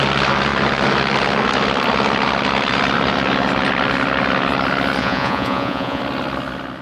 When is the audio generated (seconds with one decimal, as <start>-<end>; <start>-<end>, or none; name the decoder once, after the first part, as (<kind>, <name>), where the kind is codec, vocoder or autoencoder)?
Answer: 5.0-6.0 (vocoder, Vocos)

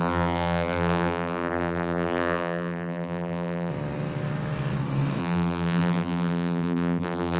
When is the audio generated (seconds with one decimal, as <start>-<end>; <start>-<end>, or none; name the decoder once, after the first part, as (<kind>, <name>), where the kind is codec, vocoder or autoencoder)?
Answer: 0.0-3.7 (vocoder, BigVGAN v2); 5.2-7.4

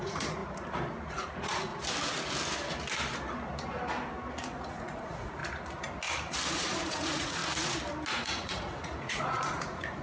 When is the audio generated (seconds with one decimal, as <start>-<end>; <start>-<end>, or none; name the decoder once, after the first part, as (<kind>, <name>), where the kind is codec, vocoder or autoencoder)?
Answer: 0.0-0.4 (vocoder, Vocos); 1.1-1.7; 4.3-5.4; 6.5-7.4; 8.1-10.0

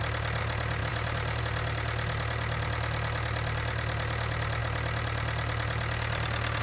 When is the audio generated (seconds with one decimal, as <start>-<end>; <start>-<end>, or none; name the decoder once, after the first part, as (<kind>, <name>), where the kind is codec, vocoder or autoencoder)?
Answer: 0.8-1.4 (vocoder, BigVGAN v2)

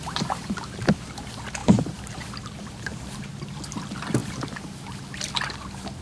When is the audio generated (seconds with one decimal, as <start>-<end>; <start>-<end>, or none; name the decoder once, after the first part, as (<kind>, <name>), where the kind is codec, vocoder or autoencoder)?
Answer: 1.6-2.4 (vocoder, BigVGAN v2)

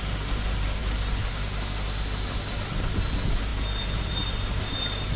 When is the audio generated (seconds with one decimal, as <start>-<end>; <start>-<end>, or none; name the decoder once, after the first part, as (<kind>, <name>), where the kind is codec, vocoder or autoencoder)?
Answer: none